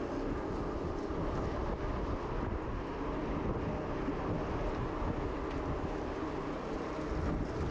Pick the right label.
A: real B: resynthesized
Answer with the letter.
A